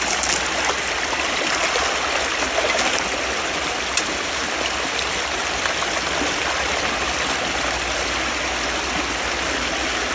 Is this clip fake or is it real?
real